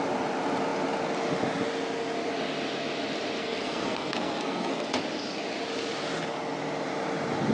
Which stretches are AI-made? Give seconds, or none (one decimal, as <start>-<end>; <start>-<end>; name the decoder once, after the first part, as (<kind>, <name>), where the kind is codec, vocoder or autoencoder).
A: 3.4-4.9 (codec, SNAC)